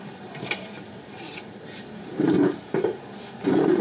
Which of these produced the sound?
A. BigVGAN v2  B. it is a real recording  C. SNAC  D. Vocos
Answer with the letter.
A